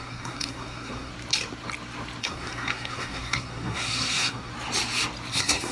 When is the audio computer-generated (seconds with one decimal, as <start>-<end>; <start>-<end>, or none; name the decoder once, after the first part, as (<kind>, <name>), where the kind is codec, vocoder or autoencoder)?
0.0-1.1 (codec, SNAC); 2.2-4.5; 5.3-5.7